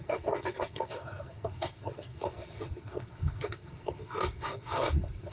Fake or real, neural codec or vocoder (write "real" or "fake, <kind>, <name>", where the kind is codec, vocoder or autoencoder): fake, codec, SNAC